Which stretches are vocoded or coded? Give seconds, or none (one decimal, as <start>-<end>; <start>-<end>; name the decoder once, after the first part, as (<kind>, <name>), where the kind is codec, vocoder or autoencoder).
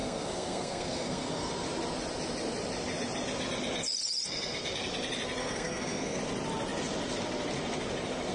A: 0.0-1.5 (codec, SNAC); 5.4-6.2